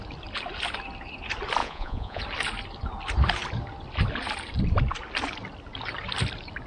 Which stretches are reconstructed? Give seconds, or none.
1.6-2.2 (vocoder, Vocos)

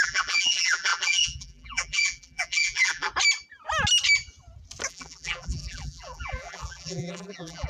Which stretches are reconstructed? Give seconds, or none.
0.0-3.1 (vocoder, BigVGAN v2); 4.9-7.7

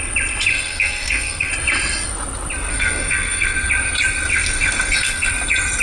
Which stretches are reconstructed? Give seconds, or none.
0.5-1.5 (codec, SNAC); 2.7-3.7; 4.3-5.3

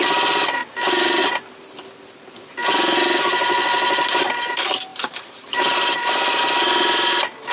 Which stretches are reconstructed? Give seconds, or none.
0.6-1.2 (vocoder, BigVGAN v2); 4.9-6.4

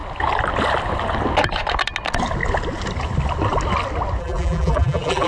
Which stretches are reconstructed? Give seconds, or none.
4.2-5.3 (vocoder, BigVGAN v2)